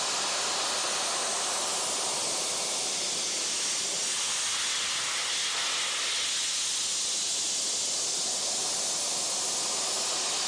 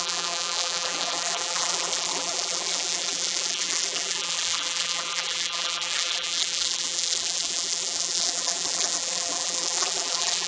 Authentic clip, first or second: first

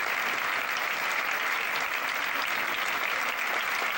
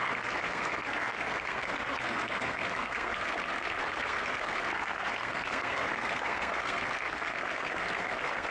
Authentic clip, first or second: first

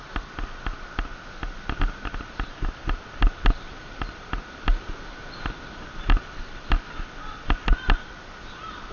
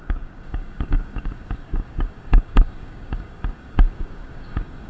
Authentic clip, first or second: first